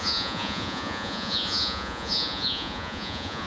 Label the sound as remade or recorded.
remade